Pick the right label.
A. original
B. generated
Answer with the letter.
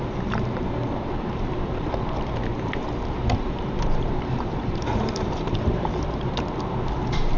B